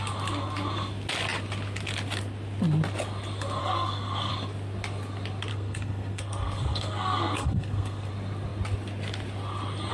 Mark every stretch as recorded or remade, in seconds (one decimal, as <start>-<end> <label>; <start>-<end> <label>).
0.0-3.6 recorded; 3.6-4.3 remade; 4.3-5.5 recorded; 5.5-8.1 remade; 8.1-9.9 recorded